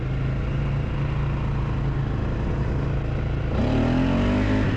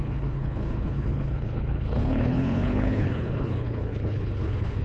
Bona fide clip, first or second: first